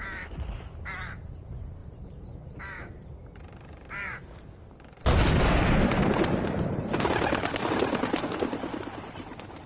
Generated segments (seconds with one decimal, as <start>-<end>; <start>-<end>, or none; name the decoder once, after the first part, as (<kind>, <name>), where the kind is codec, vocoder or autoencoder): 0.0-9.7 (vocoder, BigVGAN v2)